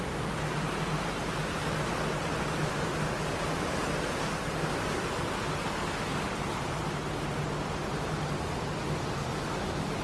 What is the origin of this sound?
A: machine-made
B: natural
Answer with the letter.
B